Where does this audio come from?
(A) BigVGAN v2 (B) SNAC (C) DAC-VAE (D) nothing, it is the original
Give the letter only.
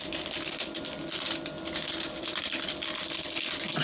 D